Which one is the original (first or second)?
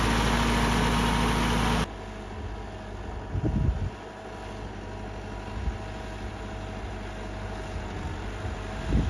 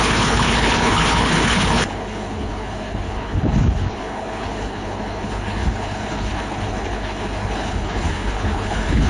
first